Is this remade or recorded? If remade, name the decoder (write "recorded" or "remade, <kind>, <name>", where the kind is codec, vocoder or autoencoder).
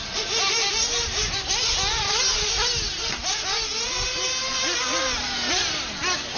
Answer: recorded